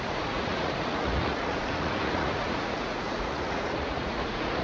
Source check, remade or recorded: remade